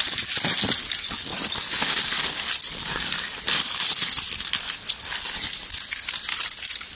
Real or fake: real